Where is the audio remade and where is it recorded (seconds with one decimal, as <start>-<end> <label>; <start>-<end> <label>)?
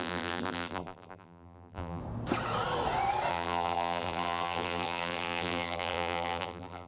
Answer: 0.0-2.0 remade; 2.0-3.3 recorded; 3.3-6.9 remade